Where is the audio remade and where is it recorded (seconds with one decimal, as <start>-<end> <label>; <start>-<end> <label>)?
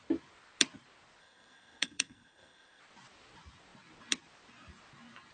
0.0-1.2 recorded; 1.2-2.8 remade; 2.8-5.3 recorded